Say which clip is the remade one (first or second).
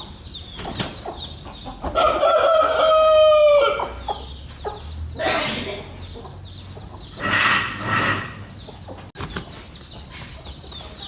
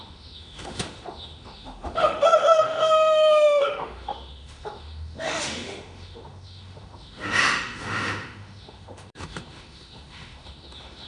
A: second